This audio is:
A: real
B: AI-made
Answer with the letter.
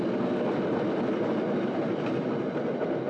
A